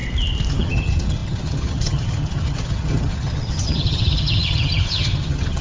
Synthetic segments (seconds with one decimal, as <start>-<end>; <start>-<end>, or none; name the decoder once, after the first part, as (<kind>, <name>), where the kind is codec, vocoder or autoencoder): 0.5-5.6 (vocoder, HiFi-GAN)